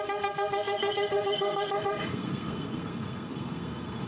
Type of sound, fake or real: fake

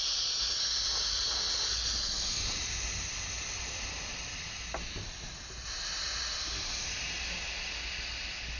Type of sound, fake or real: real